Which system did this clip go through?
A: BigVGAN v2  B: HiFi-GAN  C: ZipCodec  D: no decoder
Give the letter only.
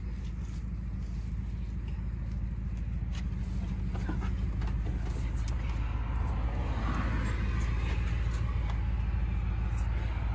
D